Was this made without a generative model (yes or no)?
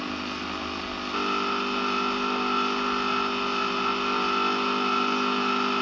yes